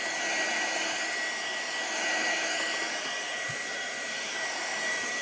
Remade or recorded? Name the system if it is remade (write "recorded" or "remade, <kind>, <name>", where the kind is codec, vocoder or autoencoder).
remade, vocoder, BigVGAN v2